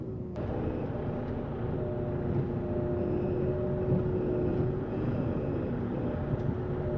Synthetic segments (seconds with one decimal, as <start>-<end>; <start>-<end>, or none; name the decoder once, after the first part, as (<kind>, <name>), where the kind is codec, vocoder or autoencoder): 4.5-5.5 (vocoder, Vocos)